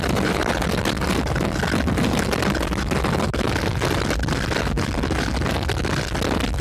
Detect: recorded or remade recorded